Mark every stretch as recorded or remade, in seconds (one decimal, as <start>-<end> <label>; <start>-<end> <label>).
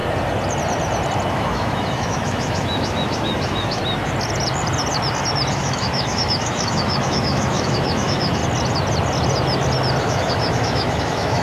0.0-1.3 recorded; 1.3-3.8 remade; 3.8-5.5 recorded; 5.5-8.4 remade; 8.4-10.0 recorded; 10.0-11.4 remade